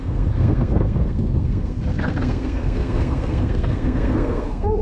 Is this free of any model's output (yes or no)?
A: no